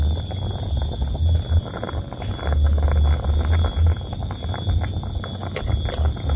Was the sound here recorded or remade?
recorded